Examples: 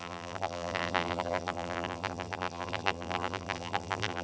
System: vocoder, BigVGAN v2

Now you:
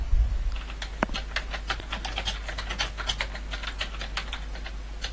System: none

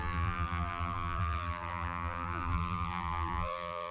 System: vocoder, BigVGAN v2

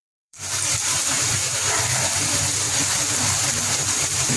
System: vocoder, BigVGAN v2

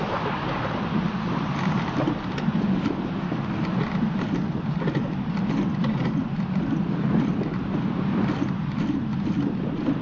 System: vocoder, BigVGAN v2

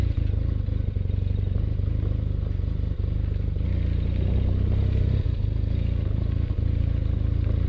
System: none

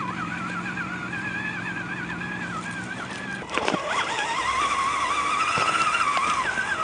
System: vocoder, BigVGAN v2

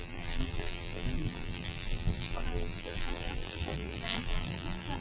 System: vocoder, BigVGAN v2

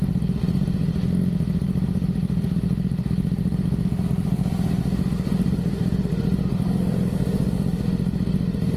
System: none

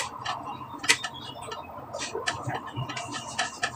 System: none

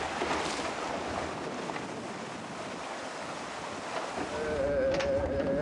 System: none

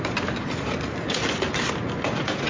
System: vocoder, BigVGAN v2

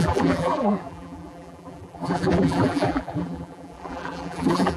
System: vocoder, BigVGAN v2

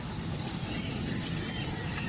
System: vocoder, BigVGAN v2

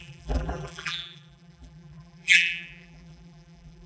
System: vocoder, BigVGAN v2